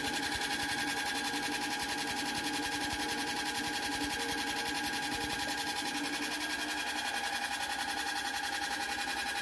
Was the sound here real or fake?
real